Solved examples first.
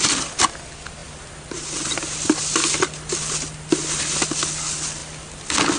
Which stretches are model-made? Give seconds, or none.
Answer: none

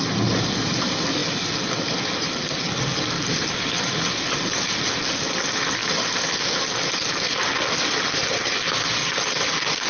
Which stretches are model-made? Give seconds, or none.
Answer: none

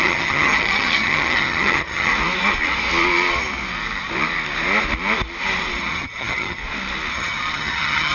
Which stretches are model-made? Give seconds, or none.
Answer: 0.0-2.1 (vocoder, HiFi-GAN); 5.8-6.6; 7.1-8.1

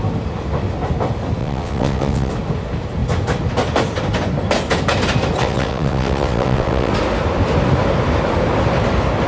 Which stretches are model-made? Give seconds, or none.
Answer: 1.4-2.3 (vocoder, WaveNeXt); 5.4-6.9